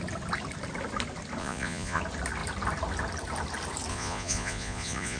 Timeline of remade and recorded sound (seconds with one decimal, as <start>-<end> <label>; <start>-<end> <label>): 0.0-1.4 recorded; 1.4-2.0 remade; 2.0-3.9 recorded; 3.9-5.2 remade